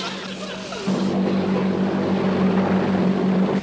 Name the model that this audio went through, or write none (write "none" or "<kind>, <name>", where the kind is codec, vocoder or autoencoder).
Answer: none